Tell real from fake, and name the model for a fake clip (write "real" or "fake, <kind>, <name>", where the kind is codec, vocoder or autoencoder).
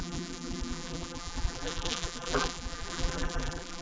fake, vocoder, BigVGAN v2